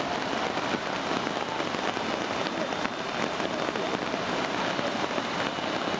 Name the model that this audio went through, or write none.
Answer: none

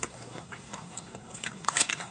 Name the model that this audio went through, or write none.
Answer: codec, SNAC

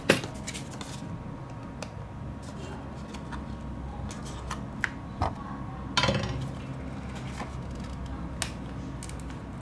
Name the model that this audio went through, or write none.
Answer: none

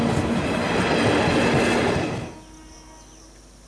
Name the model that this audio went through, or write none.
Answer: none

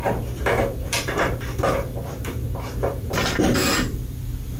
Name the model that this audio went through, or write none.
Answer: vocoder, BigVGAN v2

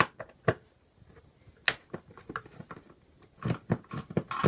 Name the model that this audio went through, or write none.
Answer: none